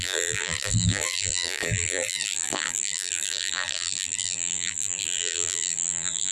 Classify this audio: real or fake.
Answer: fake